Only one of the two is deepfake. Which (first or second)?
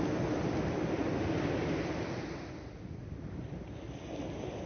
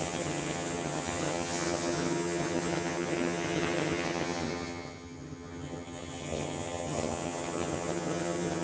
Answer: second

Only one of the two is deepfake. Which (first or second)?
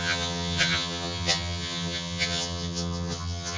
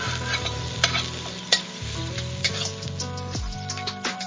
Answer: first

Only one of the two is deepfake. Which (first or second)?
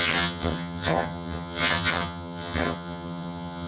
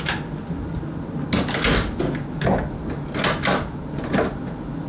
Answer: first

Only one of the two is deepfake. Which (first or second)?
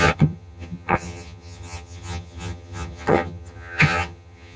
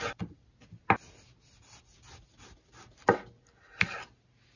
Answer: first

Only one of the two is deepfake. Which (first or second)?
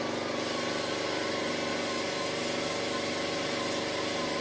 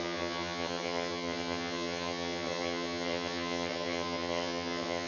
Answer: second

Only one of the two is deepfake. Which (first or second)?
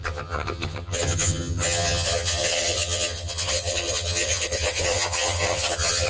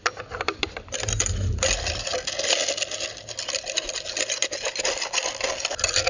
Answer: first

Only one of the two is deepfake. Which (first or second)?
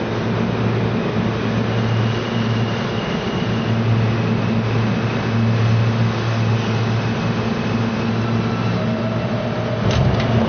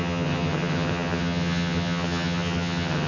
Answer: second